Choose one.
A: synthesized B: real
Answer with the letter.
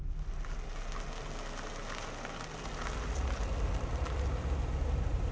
B